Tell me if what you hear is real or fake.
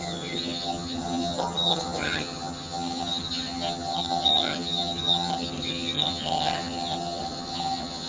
fake